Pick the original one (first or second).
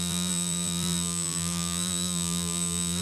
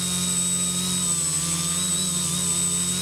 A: second